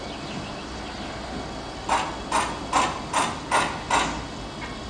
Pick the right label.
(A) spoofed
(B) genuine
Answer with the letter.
B